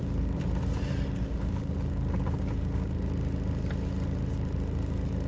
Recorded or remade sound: recorded